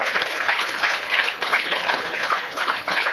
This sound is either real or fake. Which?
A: fake